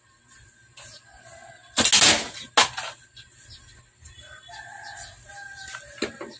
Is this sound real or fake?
real